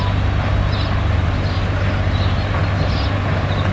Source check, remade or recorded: recorded